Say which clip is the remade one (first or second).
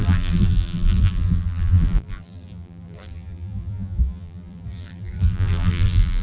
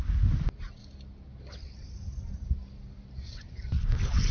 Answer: first